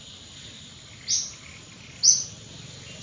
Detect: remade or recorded recorded